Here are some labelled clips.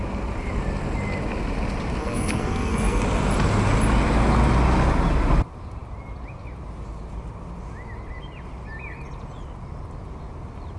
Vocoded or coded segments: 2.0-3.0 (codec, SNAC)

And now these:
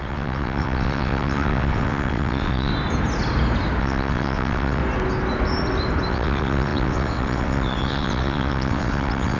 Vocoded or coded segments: 0.0-2.7 (vocoder, WaveNeXt); 3.8-4.8; 6.1-9.4

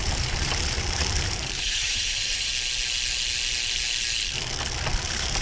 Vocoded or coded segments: 0.0-2.5 (vocoder, BigVGAN v2); 5.0-5.4

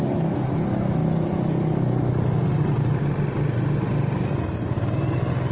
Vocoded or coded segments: none

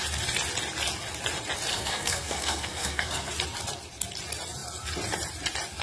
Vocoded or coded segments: 1.7-3.3 (codec, SNAC)

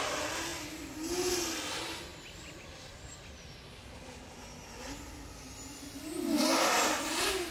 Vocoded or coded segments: none

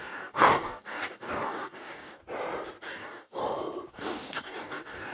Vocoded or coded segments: 0.0-2.2 (codec, DAC); 2.9-3.4; 3.9-5.1